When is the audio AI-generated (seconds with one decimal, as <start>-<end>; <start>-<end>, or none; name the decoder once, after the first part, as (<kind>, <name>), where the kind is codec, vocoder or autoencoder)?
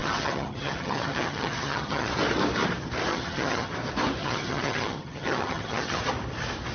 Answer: 0.0-2.1 (vocoder, HiFi-GAN); 3.1-3.7; 4.2-6.0